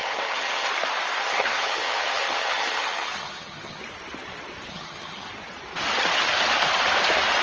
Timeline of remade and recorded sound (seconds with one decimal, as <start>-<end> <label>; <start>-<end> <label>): 0.0-0.7 remade; 0.7-1.2 recorded; 1.2-3.8 remade; 3.8-4.7 recorded; 4.7-5.3 remade; 5.3-7.4 recorded